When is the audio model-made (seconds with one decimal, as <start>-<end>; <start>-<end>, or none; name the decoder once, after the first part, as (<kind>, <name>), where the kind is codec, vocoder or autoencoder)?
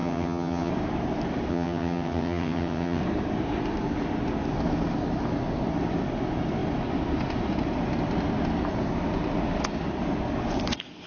0.0-0.7 (vocoder, HiFi-GAN); 1.5-3.0